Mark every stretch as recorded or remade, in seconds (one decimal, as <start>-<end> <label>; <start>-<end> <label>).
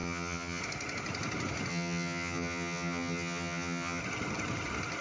0.0-0.6 remade; 0.6-1.7 recorded; 1.7-4.0 remade; 4.0-5.0 recorded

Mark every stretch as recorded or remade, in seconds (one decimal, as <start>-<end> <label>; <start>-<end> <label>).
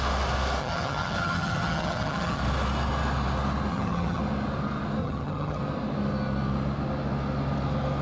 0.0-0.6 recorded; 0.6-2.4 remade; 2.4-3.7 recorded; 3.7-4.2 remade; 4.2-5.0 recorded; 5.0-5.6 remade; 5.6-8.0 recorded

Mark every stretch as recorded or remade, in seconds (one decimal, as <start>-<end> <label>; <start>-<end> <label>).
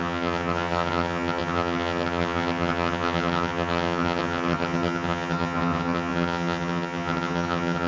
0.0-7.9 remade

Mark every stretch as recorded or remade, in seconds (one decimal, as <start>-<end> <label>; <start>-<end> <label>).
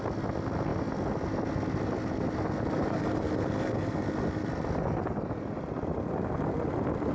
0.0-7.1 recorded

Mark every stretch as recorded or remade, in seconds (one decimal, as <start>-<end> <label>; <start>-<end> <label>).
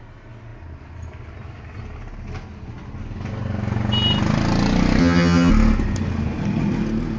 0.0-5.0 recorded; 5.0-5.5 remade; 5.5-7.2 recorded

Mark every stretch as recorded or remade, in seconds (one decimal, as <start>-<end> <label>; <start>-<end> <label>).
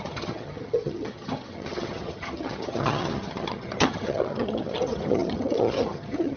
0.0-6.4 remade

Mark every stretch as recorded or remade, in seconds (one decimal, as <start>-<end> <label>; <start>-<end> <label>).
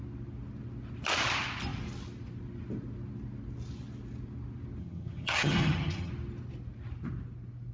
0.0-4.8 recorded; 4.8-6.1 remade; 6.1-7.7 recorded